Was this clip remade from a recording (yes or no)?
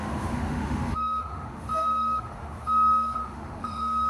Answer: yes